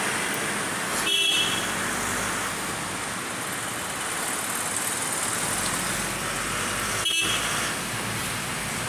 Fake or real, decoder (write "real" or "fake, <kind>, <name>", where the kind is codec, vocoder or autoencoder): real